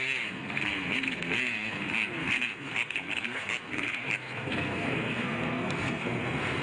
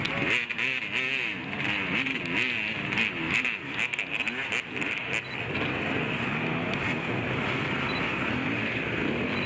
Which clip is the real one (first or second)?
second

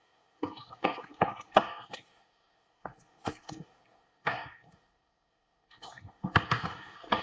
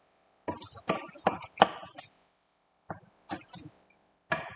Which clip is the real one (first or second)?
second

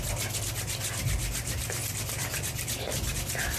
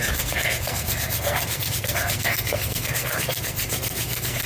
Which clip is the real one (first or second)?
first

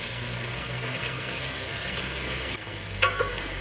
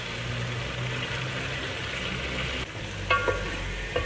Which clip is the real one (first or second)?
second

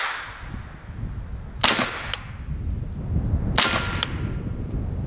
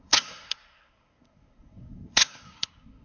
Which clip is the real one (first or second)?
first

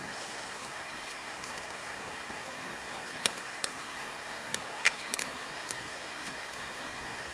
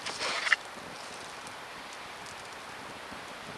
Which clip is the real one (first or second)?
second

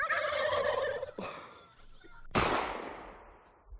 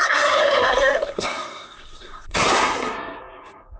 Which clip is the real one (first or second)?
first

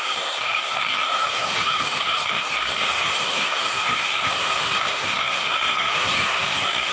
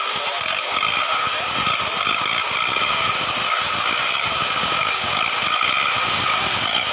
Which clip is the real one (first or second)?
second